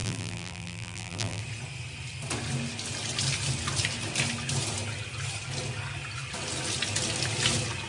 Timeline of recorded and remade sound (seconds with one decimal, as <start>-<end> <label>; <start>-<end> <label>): 0.0-1.4 remade; 1.4-7.9 recorded